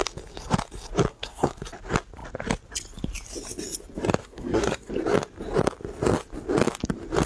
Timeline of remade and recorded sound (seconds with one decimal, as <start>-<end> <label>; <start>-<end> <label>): 0.0-1.1 recorded; 1.1-1.6 remade; 1.6-4.2 recorded; 4.2-4.9 remade; 4.9-7.3 recorded